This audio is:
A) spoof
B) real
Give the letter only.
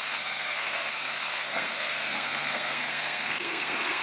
A